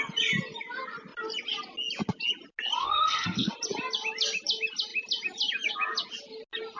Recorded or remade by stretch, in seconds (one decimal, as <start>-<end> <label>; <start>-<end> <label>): 0.0-2.8 recorded; 2.8-3.5 remade; 3.5-6.8 recorded